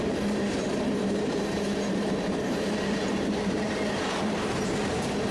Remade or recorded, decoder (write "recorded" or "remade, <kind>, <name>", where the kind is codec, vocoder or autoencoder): remade, vocoder, BigVGAN v2